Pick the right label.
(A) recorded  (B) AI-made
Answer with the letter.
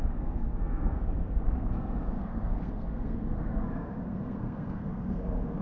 B